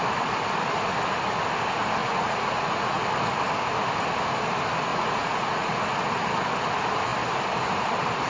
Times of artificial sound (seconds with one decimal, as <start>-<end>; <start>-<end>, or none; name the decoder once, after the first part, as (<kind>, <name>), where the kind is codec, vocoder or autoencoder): 2.0-3.0 (vocoder, Vocos); 4.9-5.8